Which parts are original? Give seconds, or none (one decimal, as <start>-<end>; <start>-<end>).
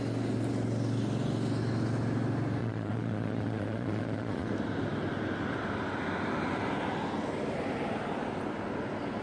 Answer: 0.0-2.6; 4.5-9.2